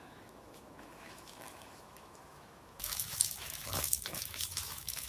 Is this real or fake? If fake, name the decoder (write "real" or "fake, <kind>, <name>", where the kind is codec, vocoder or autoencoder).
fake, autoencoder, DAC-VAE